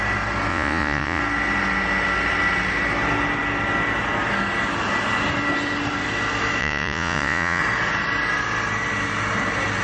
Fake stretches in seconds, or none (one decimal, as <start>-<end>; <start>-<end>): 0.5-1.2; 6.6-7.6